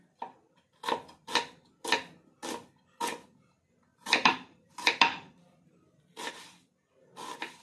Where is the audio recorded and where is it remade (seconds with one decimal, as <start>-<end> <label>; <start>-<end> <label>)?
0.0-3.9 recorded; 3.9-5.3 remade; 5.3-7.6 recorded